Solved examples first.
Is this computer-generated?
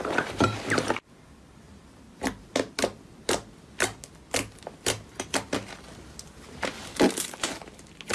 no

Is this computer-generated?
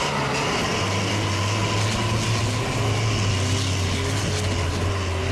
no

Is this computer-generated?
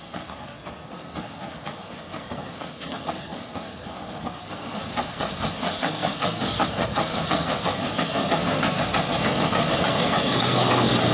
yes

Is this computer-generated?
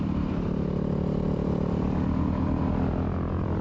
yes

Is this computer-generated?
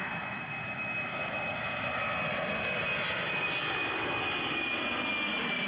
no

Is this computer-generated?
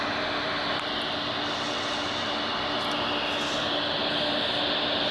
no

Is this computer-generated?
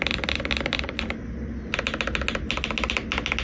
no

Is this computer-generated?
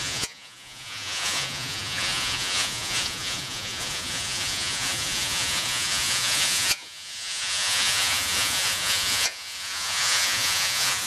yes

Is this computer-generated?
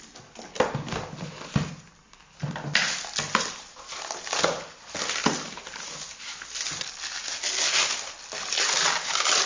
no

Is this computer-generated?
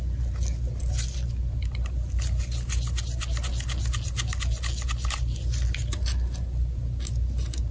no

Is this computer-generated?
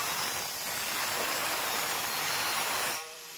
yes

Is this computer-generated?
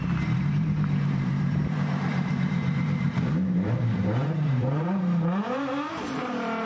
yes